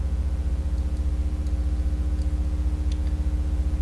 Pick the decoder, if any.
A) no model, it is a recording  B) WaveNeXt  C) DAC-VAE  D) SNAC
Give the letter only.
A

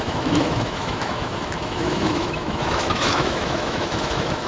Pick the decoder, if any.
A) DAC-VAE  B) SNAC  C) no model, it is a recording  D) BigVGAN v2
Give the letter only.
A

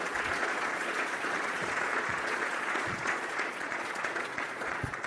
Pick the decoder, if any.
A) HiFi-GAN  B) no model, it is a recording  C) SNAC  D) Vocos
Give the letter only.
D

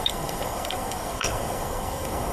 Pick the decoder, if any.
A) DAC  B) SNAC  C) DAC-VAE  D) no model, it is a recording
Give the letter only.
B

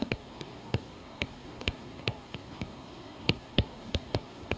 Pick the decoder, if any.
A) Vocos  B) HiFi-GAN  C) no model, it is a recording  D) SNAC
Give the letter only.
D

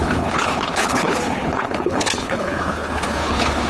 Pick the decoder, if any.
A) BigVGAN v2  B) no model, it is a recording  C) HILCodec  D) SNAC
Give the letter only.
C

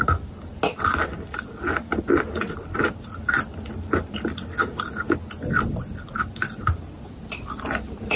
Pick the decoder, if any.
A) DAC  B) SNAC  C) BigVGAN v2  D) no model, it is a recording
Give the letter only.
D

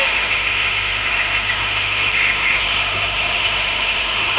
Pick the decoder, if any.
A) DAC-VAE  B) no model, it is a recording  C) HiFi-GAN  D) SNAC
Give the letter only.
A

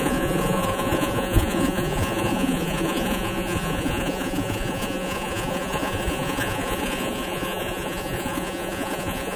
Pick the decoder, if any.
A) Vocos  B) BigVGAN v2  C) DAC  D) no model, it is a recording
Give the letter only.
A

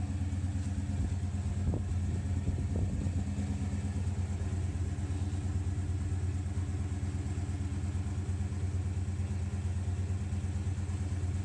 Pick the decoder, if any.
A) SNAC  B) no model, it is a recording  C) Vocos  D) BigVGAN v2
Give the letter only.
B